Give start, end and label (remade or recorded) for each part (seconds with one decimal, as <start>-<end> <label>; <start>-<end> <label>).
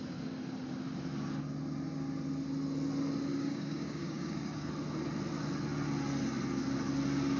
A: 0.0-3.3 recorded; 3.3-4.7 remade; 4.7-7.4 recorded